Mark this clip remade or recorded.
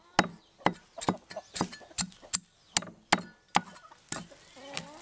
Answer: recorded